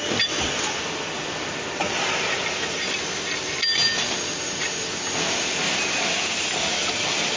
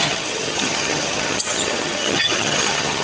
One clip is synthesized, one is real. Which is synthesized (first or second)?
second